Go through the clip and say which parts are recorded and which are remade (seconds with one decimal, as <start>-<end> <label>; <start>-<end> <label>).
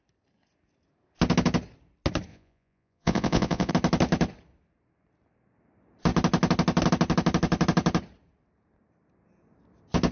0.0-2.3 recorded; 2.3-3.7 remade; 3.7-10.1 recorded